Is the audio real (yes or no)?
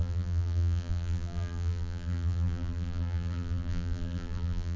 no